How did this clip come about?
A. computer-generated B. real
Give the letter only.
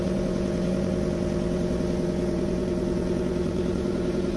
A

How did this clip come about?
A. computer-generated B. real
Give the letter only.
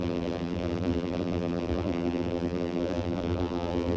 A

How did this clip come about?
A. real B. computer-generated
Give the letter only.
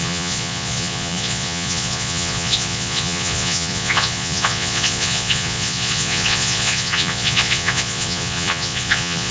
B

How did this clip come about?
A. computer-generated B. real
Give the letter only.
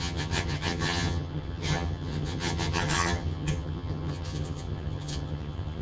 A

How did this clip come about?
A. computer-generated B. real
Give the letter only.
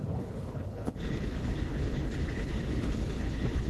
A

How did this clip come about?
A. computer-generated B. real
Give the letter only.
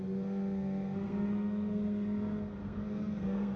A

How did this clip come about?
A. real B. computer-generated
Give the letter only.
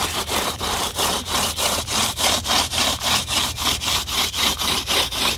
B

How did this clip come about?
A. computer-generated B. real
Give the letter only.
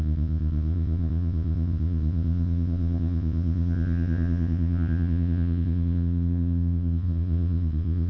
A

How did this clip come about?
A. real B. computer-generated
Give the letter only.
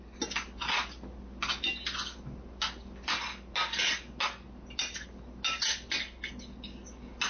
A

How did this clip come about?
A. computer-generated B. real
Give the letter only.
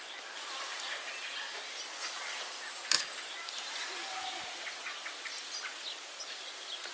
B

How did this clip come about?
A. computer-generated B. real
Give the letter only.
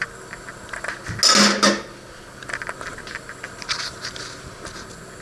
B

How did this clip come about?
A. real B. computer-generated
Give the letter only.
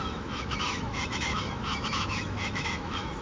B